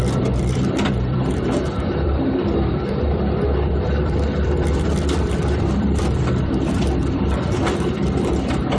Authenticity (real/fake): fake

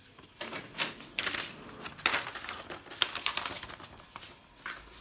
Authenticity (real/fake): real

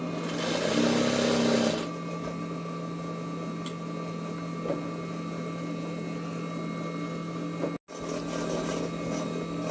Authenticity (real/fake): real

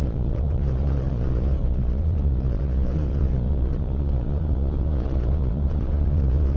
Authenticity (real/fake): fake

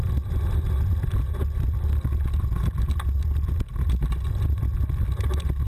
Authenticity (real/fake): real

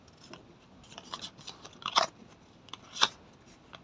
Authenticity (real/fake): real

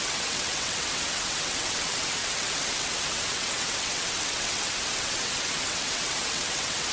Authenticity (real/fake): fake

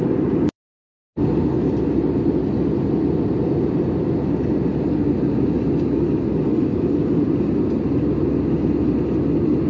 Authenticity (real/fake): real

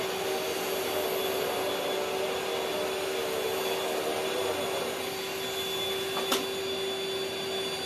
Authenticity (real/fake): real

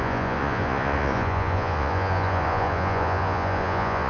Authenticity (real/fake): fake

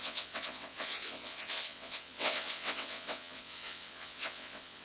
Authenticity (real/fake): fake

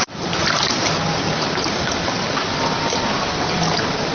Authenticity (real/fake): real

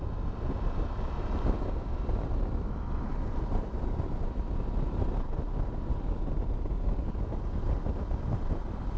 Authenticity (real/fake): real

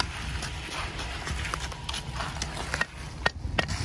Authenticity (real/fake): real